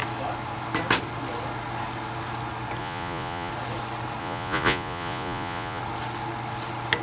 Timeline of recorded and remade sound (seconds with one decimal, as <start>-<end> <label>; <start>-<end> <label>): 0.0-2.8 recorded; 2.8-3.5 remade; 3.5-4.2 recorded; 4.2-5.8 remade; 5.8-7.0 recorded